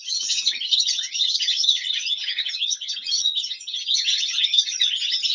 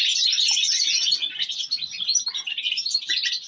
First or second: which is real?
second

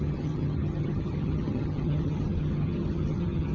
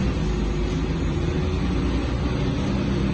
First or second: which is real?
second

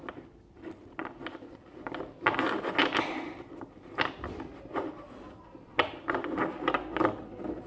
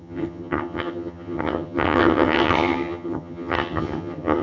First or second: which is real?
first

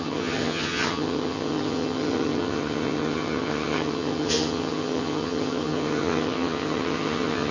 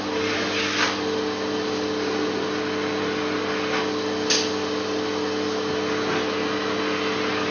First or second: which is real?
second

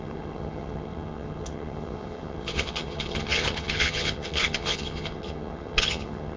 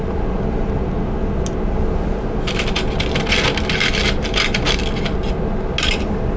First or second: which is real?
second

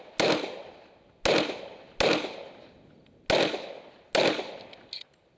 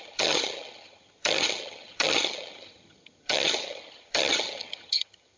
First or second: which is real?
first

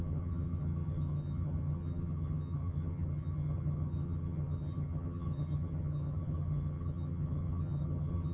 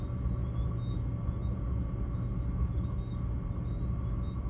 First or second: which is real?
second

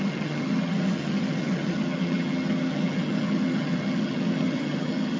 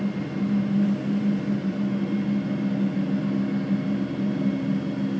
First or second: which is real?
second